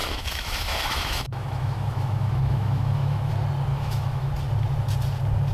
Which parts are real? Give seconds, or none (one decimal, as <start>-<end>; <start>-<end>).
3.3-3.7; 4.3-5.5